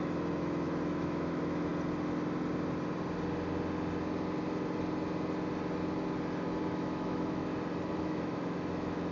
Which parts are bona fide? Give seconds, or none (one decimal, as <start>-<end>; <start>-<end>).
1.7-6.7; 7.5-8.0